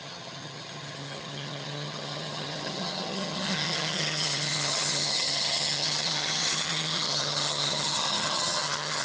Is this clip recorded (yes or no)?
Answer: no